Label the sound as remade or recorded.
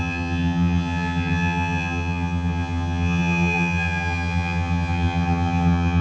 remade